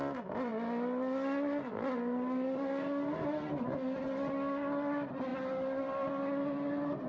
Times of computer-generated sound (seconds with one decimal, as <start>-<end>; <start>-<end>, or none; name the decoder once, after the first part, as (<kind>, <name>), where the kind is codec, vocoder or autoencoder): none